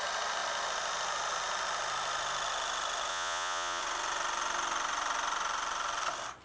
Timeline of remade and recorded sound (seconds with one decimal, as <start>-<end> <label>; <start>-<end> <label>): 0.0-3.1 recorded; 3.1-3.8 remade; 3.8-6.4 recorded

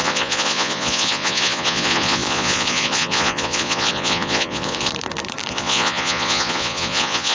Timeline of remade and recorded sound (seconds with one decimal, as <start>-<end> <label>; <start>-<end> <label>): 0.0-4.9 remade; 4.9-5.5 recorded; 5.5-7.3 remade

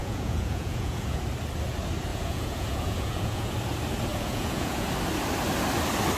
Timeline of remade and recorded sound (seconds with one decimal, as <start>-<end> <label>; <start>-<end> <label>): 0.0-1.2 remade; 1.2-2.1 recorded; 2.1-3.5 remade; 3.5-4.1 recorded; 4.1-4.9 remade; 4.9-6.2 recorded

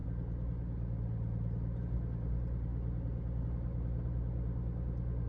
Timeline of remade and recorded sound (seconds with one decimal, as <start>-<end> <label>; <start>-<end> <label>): 0.0-5.3 recorded

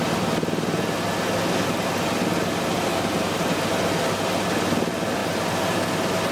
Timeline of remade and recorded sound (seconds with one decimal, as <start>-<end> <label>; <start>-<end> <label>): 0.0-2.9 recorded; 2.9-3.6 remade; 3.6-5.2 recorded; 5.2-5.8 remade; 5.8-6.3 recorded